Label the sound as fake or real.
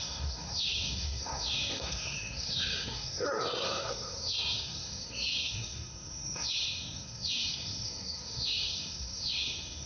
fake